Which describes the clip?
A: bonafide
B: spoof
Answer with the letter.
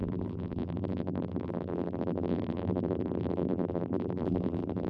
B